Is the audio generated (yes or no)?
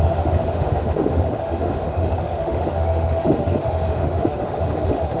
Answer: yes